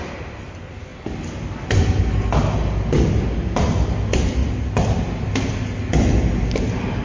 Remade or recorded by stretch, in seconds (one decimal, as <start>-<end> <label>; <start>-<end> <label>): 0.0-7.0 recorded